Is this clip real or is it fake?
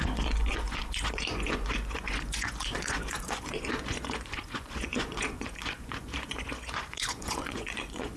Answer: fake